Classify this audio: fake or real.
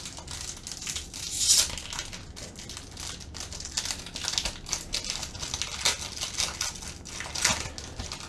real